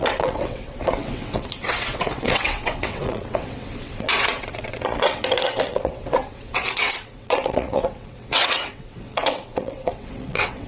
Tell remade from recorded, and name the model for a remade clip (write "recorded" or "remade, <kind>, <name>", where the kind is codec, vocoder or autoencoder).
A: remade, vocoder, WaveNeXt